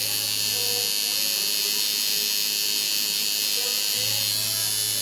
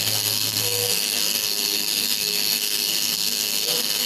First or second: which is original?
first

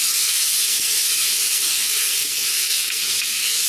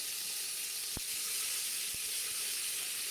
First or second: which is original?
second